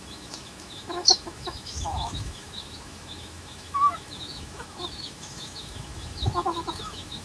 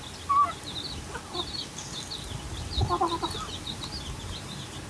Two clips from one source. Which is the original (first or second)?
second